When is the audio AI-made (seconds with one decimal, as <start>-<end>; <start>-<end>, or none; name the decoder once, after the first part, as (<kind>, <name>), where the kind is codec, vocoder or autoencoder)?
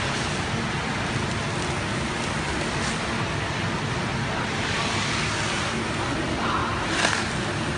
none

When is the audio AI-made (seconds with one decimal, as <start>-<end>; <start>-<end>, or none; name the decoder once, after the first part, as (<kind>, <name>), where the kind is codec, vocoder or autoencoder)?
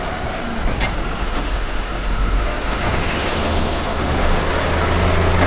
1.2-4.4 (autoencoder, DAC-VAE)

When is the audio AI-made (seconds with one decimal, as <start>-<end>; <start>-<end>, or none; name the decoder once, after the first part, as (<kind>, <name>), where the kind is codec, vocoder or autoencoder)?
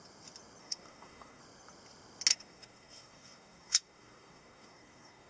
0.6-1.4 (codec, SNAC); 2.3-5.3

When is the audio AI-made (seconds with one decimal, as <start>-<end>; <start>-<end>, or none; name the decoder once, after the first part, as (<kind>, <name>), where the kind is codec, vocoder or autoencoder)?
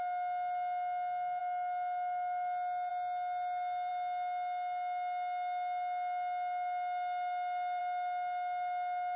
none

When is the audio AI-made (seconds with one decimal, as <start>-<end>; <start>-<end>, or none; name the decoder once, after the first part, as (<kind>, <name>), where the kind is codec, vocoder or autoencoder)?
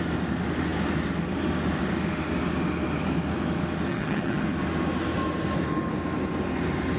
3.9-4.4 (vocoder, HiFi-GAN)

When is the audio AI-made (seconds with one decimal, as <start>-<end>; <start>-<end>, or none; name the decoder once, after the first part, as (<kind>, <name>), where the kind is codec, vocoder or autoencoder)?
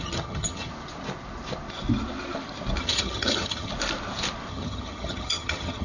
0.0-0.7 (vocoder, HiFi-GAN); 2.8-3.7; 4.5-5.8